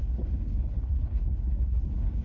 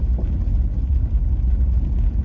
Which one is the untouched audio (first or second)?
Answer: second